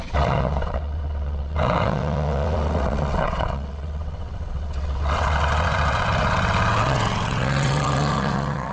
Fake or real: fake